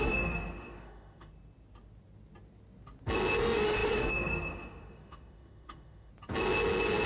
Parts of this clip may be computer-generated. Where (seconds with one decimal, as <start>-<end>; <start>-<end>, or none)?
0.0-1.3; 3.4-6.1